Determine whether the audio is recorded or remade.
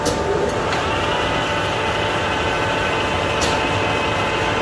recorded